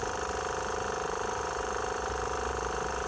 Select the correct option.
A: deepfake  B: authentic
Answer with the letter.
A